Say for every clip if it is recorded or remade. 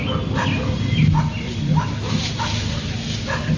recorded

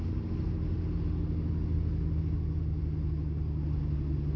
recorded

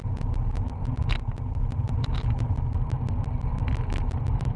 recorded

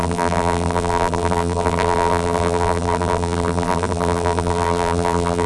remade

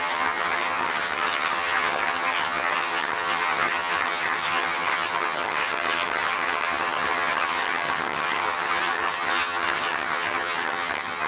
remade